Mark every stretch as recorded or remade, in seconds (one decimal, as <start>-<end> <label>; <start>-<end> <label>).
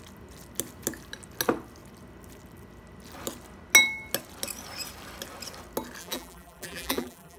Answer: 0.0-6.0 recorded; 6.0-7.4 remade